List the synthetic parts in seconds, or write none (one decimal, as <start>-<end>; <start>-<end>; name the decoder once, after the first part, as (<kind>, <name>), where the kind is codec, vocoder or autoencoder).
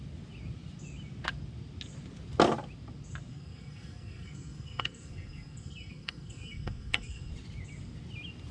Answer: 3.3-7.3 (codec, SNAC)